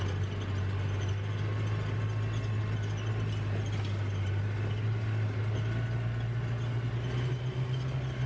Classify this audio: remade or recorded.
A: recorded